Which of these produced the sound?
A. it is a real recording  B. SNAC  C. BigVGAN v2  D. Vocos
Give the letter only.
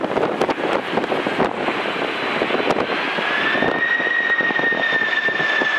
A